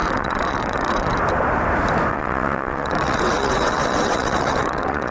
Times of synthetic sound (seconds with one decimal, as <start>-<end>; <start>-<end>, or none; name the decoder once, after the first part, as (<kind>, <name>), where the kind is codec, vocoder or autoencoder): 0.0-1.1 (vocoder, WaveNeXt); 2.1-5.1